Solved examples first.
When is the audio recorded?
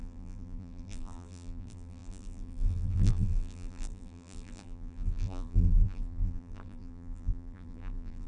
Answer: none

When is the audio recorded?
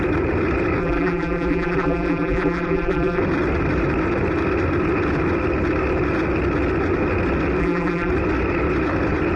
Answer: 0.0-0.8; 3.2-7.6; 8.1-9.4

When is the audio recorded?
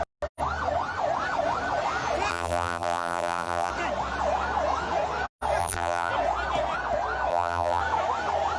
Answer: 0.0-2.3; 3.7-5.6; 6.1-7.3; 7.8-8.6